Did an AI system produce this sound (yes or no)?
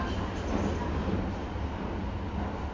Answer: no